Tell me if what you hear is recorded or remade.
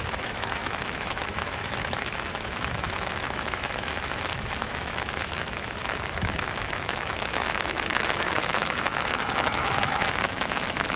remade